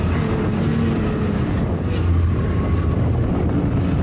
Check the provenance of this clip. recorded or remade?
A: recorded